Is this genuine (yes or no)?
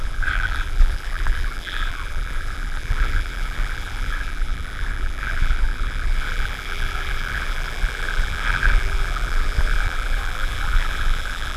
no